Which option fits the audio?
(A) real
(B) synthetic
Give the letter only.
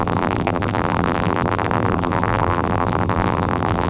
B